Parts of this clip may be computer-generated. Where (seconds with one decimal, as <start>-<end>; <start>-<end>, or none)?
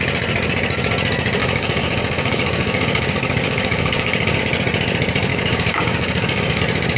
1.4-4.4; 5.3-6.6